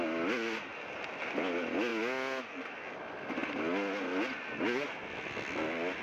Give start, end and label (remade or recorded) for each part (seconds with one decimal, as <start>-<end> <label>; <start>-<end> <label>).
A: 0.0-6.0 recorded